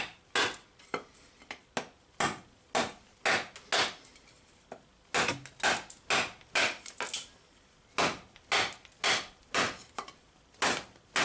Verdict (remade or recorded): recorded